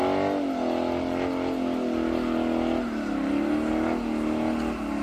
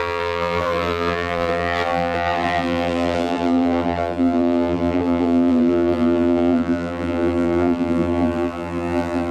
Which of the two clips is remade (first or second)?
second